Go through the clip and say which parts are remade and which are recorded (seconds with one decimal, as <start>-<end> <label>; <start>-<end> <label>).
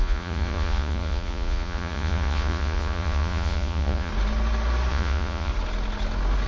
0.0-4.1 remade; 4.1-4.9 recorded; 4.9-5.5 remade; 5.5-6.5 recorded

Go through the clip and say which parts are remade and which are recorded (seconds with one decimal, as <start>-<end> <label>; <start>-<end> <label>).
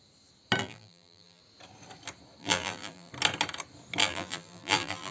0.0-0.6 recorded; 0.6-1.4 remade; 1.4-2.4 recorded; 2.4-3.1 remade; 3.1-4.0 recorded; 4.0-5.1 remade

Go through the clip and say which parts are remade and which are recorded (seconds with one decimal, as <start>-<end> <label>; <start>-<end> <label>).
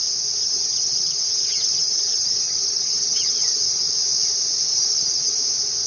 0.0-0.4 recorded; 0.4-3.9 remade; 3.9-4.7 recorded; 4.7-5.4 remade; 5.4-5.9 recorded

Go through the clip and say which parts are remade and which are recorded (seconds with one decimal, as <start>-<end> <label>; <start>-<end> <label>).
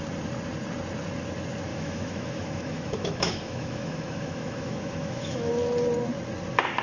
0.0-1.7 recorded; 1.7-5.5 remade; 5.5-6.8 recorded